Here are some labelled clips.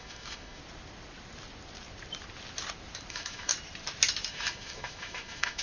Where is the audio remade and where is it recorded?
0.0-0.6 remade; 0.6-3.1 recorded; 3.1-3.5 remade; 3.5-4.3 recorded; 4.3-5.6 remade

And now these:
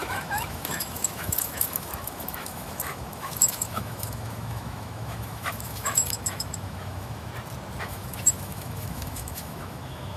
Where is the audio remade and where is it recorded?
0.0-7.3 remade; 7.3-7.8 recorded; 7.8-10.2 remade

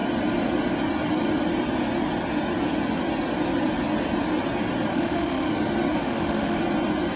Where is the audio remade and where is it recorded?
0.0-4.9 recorded; 4.9-5.5 remade; 5.5-6.0 recorded; 6.0-6.6 remade; 6.6-7.2 recorded